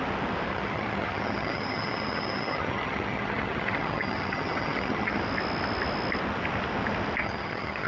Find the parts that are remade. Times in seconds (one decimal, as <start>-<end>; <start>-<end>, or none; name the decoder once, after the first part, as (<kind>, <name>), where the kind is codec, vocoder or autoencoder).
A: 0.5-5.2 (vocoder, HiFi-GAN); 7.2-7.9